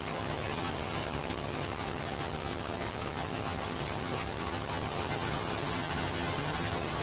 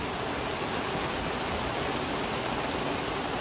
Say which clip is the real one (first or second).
second